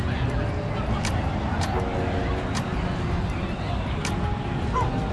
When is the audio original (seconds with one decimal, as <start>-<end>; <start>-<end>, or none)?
0.0-5.1